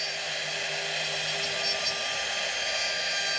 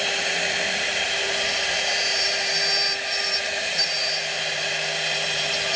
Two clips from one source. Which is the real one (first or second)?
first